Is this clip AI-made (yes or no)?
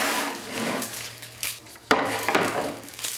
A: yes